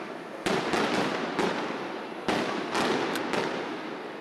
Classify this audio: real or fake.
real